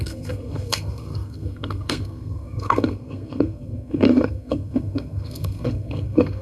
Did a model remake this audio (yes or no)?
yes